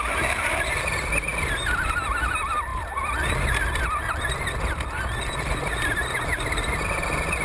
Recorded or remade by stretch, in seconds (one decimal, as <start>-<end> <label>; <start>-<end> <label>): 0.0-2.7 recorded; 2.7-3.8 remade; 3.8-6.3 recorded; 6.3-6.9 remade; 6.9-7.4 recorded